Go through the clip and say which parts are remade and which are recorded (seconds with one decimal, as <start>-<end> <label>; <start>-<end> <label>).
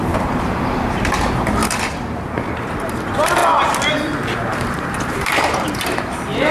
0.0-1.6 remade; 1.6-2.5 recorded; 2.5-3.4 remade; 3.4-3.9 recorded; 3.9-6.5 remade